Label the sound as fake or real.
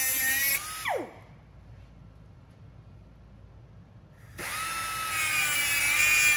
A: real